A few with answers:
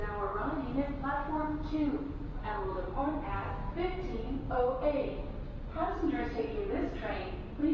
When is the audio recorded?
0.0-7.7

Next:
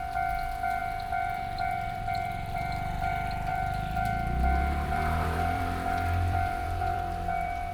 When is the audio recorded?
0.0-0.8; 3.1-3.5